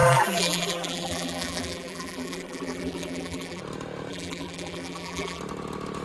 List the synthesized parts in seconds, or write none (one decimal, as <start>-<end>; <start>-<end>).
0.0-3.6; 4.1-5.4